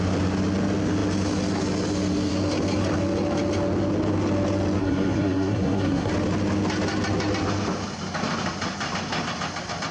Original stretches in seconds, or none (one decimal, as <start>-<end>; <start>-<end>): 0.0-4.8; 6.1-9.9